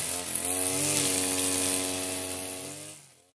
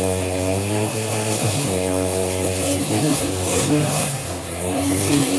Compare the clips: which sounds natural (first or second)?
first